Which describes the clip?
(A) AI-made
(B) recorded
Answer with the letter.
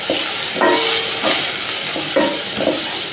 B